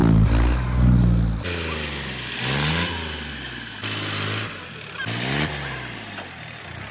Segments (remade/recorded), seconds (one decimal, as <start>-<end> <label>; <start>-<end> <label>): 0.0-6.9 recorded